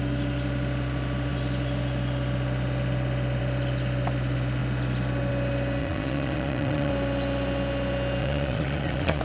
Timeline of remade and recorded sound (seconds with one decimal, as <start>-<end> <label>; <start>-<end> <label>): 0.0-5.8 recorded; 5.8-6.9 remade; 6.9-8.2 recorded; 8.2-9.2 remade